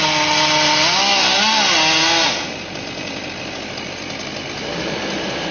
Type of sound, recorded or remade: recorded